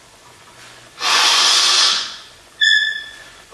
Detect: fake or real fake